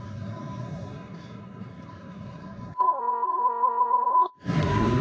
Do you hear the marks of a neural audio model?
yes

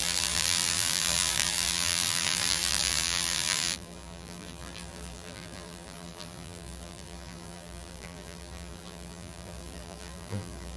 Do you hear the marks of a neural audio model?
yes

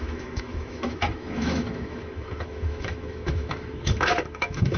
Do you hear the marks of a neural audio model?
yes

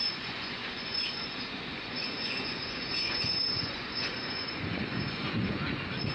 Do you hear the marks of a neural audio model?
yes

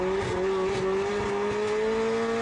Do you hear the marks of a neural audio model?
no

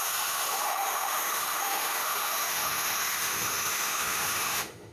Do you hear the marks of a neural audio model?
yes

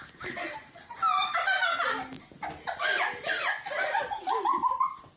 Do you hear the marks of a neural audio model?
no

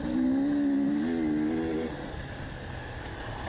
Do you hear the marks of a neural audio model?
no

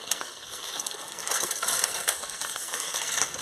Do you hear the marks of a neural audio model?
yes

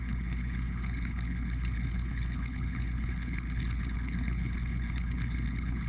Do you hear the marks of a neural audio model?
yes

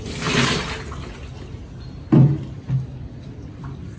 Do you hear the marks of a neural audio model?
no